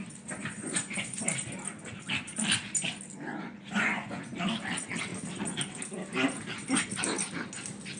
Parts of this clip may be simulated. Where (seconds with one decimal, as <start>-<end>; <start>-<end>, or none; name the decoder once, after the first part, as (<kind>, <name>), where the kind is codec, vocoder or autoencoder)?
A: 0.4-1.2 (vocoder, Vocos); 3.3-4.2